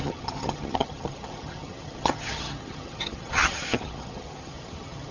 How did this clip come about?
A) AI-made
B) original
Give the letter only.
A